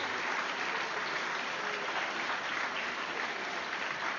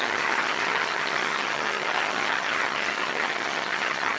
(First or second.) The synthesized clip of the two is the second